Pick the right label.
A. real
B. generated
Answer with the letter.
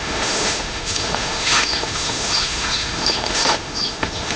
B